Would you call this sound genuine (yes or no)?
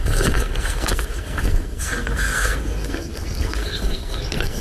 no